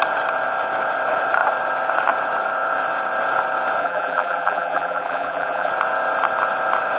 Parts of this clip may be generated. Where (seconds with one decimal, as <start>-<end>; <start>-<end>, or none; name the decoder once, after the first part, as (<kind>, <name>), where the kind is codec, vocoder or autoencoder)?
3.8-5.7 (vocoder, BigVGAN v2)